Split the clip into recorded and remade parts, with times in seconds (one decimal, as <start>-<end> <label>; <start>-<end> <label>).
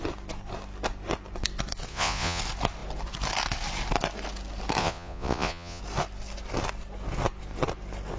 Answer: 0.0-1.9 recorded; 1.9-2.4 remade; 2.4-4.8 recorded; 4.8-5.8 remade; 5.8-8.2 recorded